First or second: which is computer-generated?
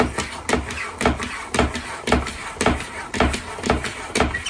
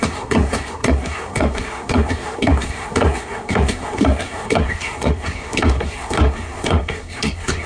second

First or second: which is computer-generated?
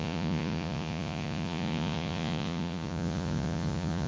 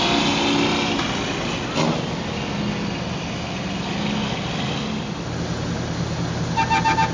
first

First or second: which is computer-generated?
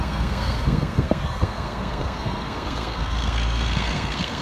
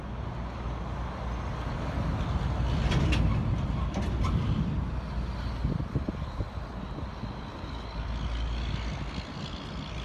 first